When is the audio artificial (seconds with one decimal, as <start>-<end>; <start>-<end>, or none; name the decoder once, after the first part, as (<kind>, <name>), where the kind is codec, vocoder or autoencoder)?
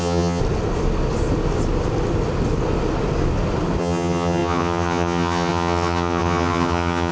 0.0-0.4 (vocoder, HiFi-GAN); 3.8-7.1